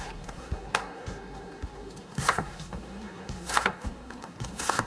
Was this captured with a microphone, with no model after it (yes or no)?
no